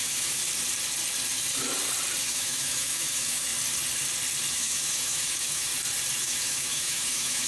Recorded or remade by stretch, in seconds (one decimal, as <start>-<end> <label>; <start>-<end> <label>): 0.0-0.4 remade; 0.4-2.2 recorded; 2.2-3.5 remade; 3.5-4.5 recorded; 4.5-5.7 remade; 5.7-6.2 recorded; 6.2-7.5 remade